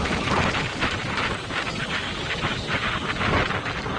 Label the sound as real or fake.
real